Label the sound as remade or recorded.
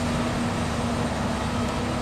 recorded